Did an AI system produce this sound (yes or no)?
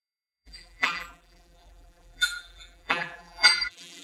yes